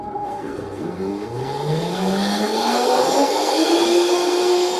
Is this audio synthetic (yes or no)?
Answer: yes